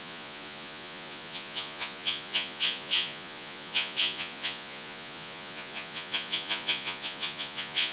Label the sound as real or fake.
fake